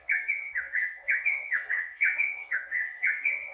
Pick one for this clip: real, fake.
fake